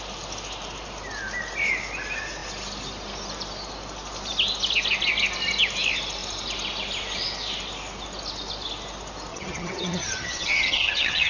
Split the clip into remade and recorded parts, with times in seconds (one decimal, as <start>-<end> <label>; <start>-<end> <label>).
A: 0.0-9.3 recorded; 9.3-11.3 remade